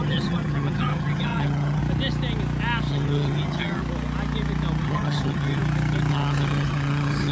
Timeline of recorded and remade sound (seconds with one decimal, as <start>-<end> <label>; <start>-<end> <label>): 0.0-1.8 remade; 1.8-2.9 recorded; 2.9-3.8 remade; 3.8-4.8 recorded; 4.8-5.6 remade; 5.6-6.1 recorded; 6.1-7.3 remade